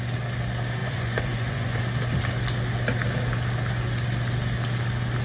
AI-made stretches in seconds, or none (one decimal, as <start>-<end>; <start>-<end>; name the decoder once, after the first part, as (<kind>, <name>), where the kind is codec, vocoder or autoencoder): 0.8-1.8 (vocoder, Vocos)